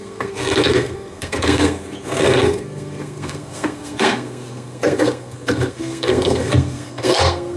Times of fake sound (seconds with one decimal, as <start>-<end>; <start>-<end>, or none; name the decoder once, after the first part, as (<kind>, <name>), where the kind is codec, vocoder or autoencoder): 0.0-7.6 (codec, SNAC)